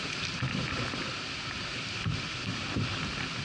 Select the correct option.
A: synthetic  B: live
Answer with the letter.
B